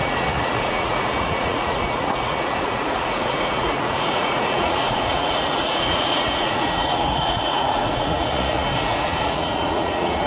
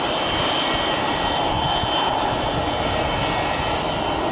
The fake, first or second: first